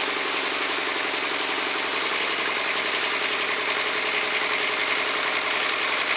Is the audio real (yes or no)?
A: yes